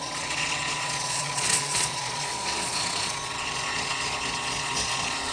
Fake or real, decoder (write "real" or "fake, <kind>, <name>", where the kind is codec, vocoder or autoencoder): fake, vocoder, Vocos